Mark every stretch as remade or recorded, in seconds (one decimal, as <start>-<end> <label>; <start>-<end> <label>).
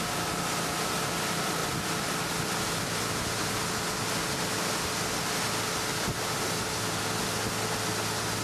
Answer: 0.0-8.4 recorded